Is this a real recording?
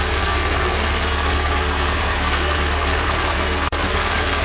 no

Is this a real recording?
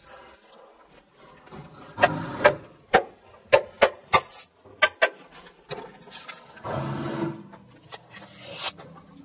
yes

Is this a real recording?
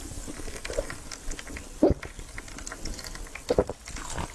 yes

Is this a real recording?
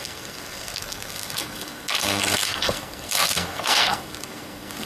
no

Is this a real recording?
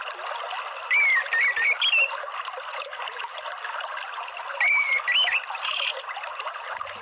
yes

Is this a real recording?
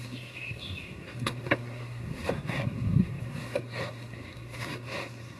no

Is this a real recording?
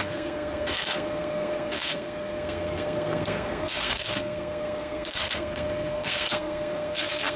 no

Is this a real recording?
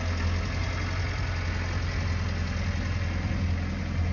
yes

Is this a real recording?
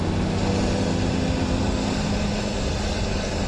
yes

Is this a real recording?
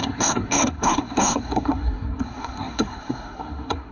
no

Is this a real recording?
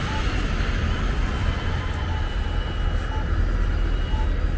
yes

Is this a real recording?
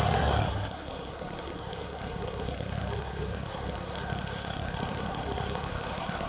no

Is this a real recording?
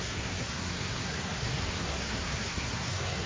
no